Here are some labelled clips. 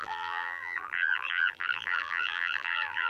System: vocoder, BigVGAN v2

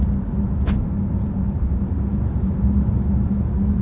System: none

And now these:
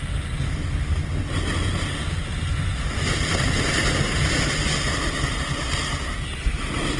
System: none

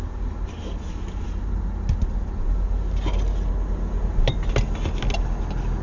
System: none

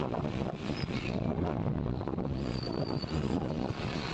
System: vocoder, Vocos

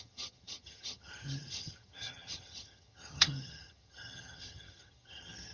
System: vocoder, HiFi-GAN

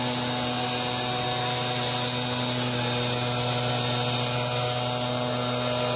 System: none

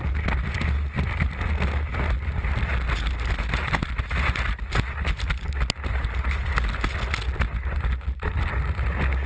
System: none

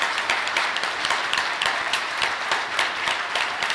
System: vocoder, BigVGAN v2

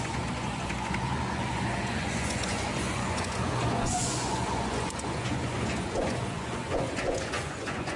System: vocoder, Vocos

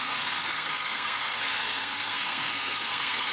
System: codec, SNAC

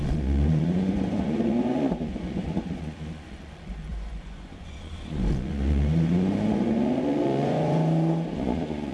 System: vocoder, Vocos